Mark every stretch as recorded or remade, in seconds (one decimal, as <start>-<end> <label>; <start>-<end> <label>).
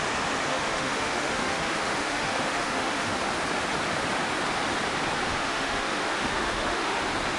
0.0-0.5 recorded; 0.5-3.2 remade; 3.2-5.3 recorded; 5.3-7.0 remade; 7.0-7.4 recorded